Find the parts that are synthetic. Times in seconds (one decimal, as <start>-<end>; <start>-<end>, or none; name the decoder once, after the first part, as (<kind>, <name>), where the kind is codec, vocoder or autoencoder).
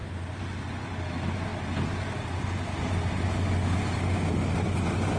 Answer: none